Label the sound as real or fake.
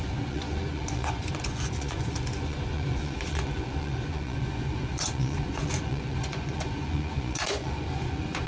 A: fake